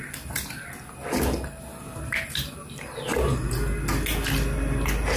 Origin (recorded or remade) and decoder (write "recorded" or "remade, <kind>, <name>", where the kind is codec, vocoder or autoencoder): recorded